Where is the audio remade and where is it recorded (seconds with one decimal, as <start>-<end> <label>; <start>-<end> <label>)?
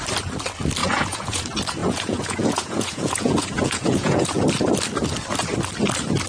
0.0-0.8 recorded; 0.8-1.4 remade; 1.4-1.8 recorded; 1.8-4.5 remade; 4.5-6.3 recorded